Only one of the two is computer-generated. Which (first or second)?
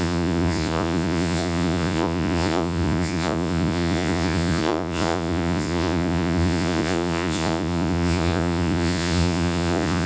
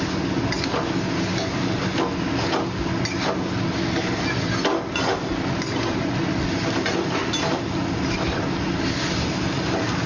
first